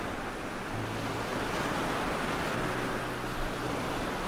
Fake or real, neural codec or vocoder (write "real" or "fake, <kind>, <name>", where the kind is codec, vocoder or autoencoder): real